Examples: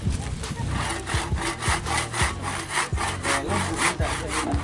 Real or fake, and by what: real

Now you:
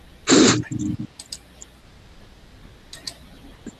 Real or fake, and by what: real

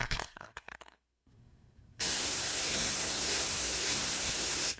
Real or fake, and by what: fake, codec, SNAC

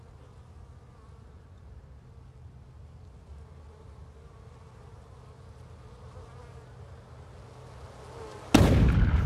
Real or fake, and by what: real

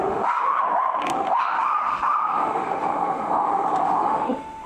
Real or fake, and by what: fake, autoencoder, DAC-VAE